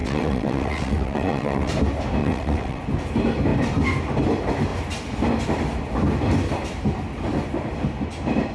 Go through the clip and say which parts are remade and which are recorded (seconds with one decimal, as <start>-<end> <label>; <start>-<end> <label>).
0.0-1.7 remade; 1.7-2.2 recorded; 2.2-2.8 remade; 2.8-8.5 recorded